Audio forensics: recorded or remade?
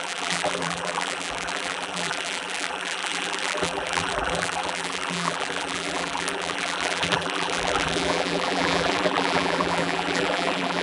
remade